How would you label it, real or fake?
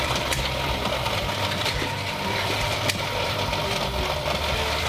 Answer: fake